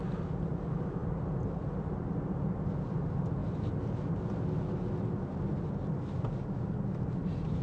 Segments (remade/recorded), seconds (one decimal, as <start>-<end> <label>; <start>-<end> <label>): 0.0-7.6 recorded